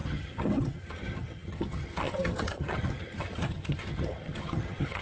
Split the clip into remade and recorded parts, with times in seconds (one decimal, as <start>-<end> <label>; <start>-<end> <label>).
0.0-5.0 remade